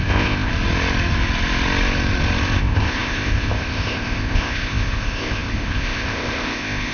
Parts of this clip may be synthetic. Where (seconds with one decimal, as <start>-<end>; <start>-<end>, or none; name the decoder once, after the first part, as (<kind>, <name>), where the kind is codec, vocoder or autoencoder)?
0.0-0.5 (codec, ZipCodec); 2.6-6.9